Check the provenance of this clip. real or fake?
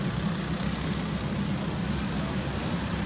real